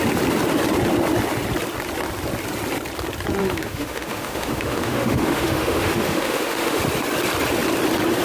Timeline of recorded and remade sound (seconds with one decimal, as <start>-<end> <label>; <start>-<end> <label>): 0.0-3.4 recorded; 3.4-6.8 remade; 6.8-8.2 recorded